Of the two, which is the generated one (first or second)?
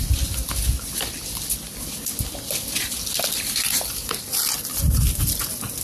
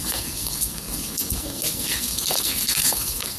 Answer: second